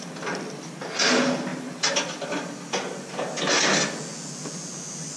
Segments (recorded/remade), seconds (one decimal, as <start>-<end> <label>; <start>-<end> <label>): 0.0-5.2 recorded